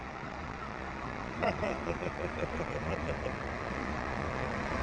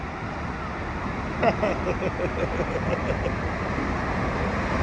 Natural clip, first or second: second